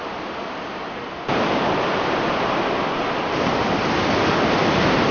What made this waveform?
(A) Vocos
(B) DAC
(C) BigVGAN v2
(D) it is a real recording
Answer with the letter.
D